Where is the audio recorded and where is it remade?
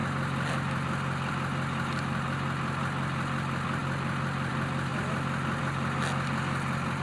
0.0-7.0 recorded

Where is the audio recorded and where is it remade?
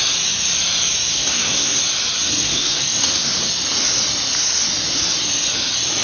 0.0-1.1 recorded; 1.1-1.8 remade; 1.8-2.4 recorded; 2.4-3.5 remade; 3.5-6.0 recorded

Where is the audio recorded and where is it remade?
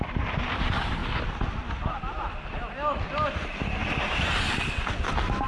0.0-5.5 recorded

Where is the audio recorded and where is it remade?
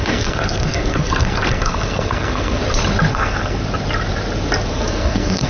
0.0-2.6 remade; 2.6-3.1 recorded; 3.1-3.6 remade; 3.6-4.7 recorded; 4.7-5.5 remade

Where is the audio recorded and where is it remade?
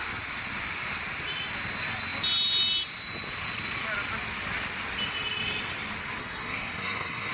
0.0-6.2 recorded; 6.2-7.3 remade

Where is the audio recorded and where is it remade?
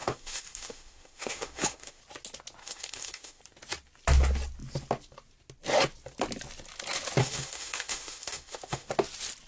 0.0-2.0 remade; 2.0-2.6 recorded; 2.6-3.4 remade; 3.4-7.2 recorded; 7.2-8.9 remade; 8.9-9.5 recorded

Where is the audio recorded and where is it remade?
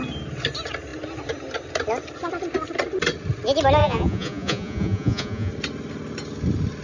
0.0-3.8 recorded; 3.8-5.5 remade; 5.5-6.8 recorded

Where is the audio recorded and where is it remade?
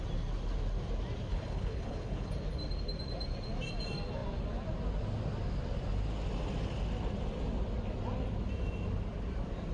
0.0-1.3 recorded; 1.3-2.3 remade; 2.3-9.7 recorded